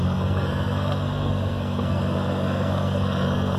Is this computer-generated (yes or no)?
yes